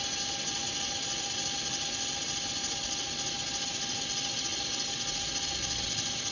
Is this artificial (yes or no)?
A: no